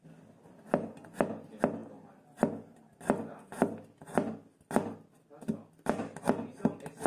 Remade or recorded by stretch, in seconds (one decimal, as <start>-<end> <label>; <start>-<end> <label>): 0.0-7.1 recorded